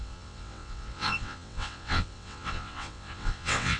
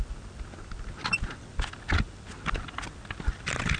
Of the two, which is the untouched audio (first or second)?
second